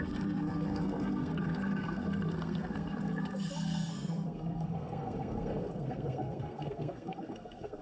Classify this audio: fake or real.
fake